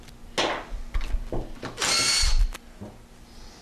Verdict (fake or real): real